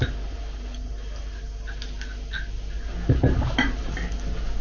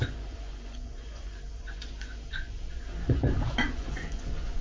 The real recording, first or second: first